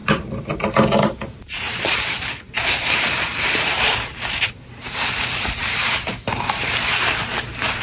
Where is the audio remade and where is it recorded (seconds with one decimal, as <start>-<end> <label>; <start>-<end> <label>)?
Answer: 0.0-1.2 recorded; 1.2-7.8 remade